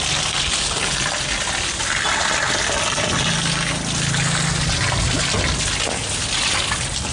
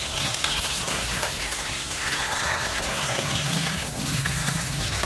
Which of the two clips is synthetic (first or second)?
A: second